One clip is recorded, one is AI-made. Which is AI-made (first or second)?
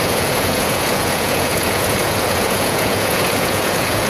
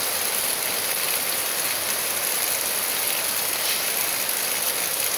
first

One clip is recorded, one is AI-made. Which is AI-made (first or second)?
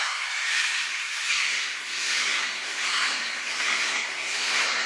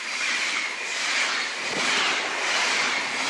first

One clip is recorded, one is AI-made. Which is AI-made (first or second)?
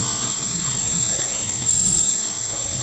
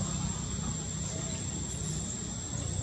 first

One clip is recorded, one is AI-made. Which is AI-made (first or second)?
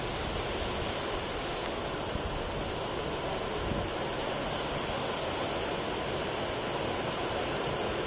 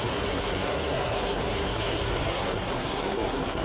second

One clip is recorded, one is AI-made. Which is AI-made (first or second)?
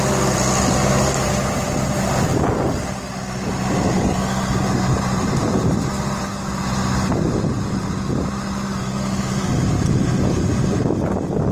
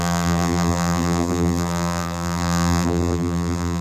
second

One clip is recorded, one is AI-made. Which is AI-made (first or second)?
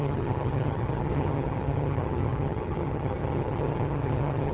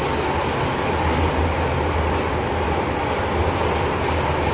first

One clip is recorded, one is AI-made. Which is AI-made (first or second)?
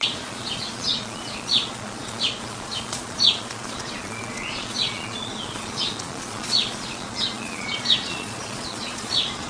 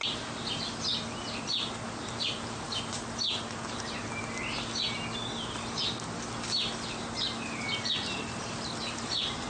first